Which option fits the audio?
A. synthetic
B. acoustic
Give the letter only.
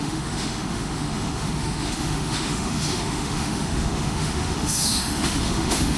A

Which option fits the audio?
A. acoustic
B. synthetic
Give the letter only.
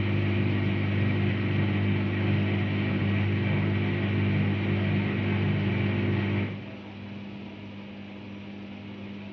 A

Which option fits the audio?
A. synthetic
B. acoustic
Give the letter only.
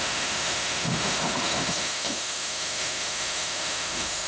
A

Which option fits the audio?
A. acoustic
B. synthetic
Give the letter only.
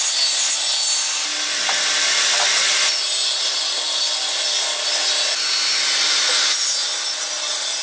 A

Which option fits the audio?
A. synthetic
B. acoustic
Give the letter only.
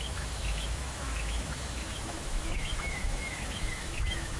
A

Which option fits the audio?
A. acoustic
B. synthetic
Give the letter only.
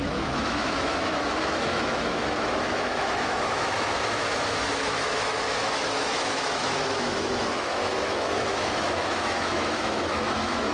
B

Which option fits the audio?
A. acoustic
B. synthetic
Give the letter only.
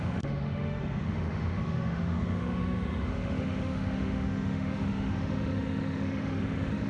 B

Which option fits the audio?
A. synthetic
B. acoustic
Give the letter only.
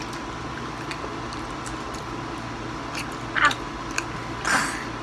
B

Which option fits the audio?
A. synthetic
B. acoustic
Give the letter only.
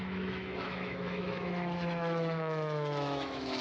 A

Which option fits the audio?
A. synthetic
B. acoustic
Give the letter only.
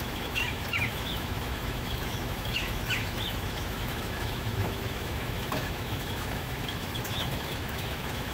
A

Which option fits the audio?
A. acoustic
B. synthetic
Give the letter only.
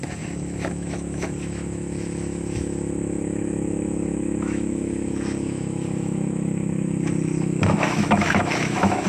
B